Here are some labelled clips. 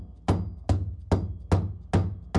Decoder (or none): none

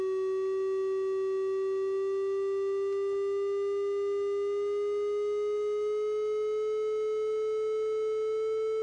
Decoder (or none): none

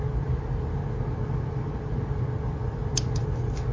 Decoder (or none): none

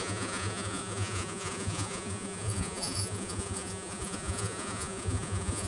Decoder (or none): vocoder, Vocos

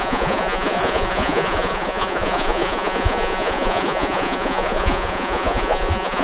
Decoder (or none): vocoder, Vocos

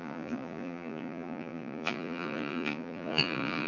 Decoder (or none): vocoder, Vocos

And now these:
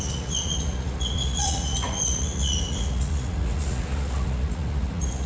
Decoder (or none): vocoder, Vocos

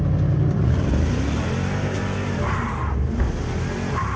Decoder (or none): none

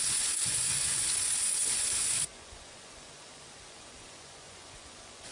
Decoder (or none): vocoder, Vocos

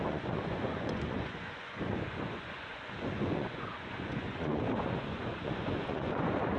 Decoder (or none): vocoder, Vocos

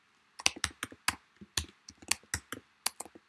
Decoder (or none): none